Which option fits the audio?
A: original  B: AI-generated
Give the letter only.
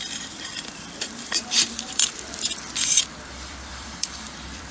B